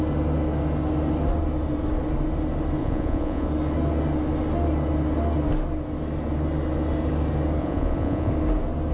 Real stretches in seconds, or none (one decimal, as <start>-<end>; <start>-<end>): 0.0-2.8; 3.5-7.6; 8.3-8.9